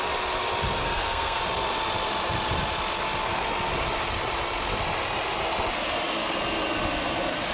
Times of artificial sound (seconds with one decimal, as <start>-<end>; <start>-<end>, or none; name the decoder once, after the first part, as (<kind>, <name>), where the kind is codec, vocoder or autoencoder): 0.8-1.4 (codec, SNAC)